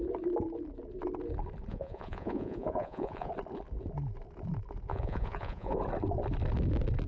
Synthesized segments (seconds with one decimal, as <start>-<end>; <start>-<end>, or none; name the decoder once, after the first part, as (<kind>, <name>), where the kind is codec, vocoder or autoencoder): 1.7-3.3 (vocoder, Vocos); 4.9-5.8